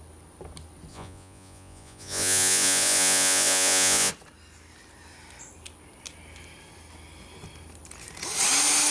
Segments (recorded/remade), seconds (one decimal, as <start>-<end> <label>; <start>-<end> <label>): 0.0-0.9 recorded; 0.9-4.1 remade; 4.1-8.9 recorded